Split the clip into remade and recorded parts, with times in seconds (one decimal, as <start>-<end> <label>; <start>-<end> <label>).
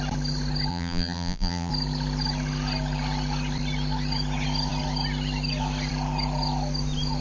0.0-0.7 recorded; 0.7-1.7 remade; 1.7-7.2 recorded